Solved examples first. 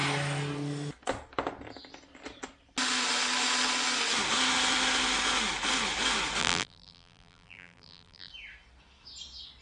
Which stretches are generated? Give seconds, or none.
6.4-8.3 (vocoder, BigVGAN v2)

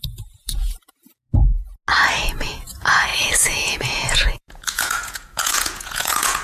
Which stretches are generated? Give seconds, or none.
0.0-1.7 (vocoder, Vocos); 2.3-6.4

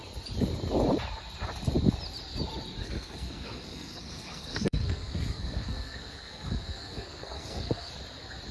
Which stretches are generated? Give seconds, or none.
2.8-7.9 (codec, SNAC)

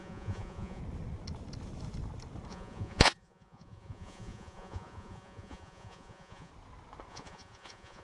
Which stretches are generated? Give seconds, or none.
0.0-0.8 (vocoder, Vocos); 2.5-6.5; 7.1-8.0

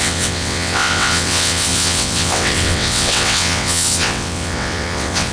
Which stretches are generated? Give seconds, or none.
0.0-5.3 (vocoder, WaveNeXt)

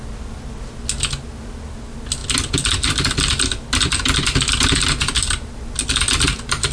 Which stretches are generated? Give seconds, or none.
none